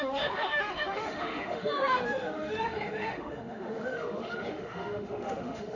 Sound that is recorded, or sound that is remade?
remade